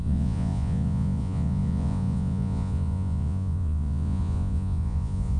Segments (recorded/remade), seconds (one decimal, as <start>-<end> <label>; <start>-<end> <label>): 0.0-5.4 remade